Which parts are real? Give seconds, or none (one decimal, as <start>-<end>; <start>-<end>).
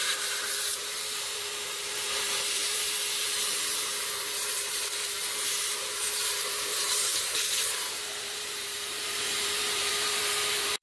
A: none